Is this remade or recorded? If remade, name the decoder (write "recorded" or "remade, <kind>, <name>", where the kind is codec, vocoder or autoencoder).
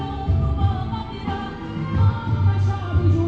recorded